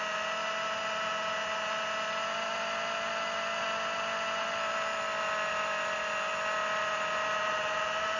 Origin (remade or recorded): recorded